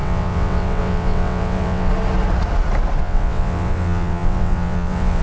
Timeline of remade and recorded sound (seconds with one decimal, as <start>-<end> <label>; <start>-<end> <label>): 0.0-1.9 remade; 1.9-3.0 recorded; 3.0-5.2 remade